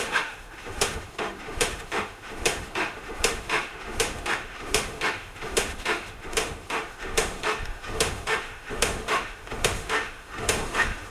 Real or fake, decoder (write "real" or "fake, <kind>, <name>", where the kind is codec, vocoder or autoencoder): fake, autoencoder, DAC-VAE